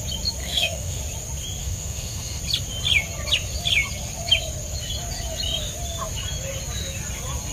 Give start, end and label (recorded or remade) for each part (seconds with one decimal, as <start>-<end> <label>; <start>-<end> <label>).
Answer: 0.0-0.4 recorded; 0.4-1.0 remade; 1.0-1.6 recorded; 1.6-2.4 remade; 2.4-7.5 recorded